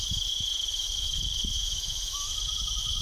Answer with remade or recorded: remade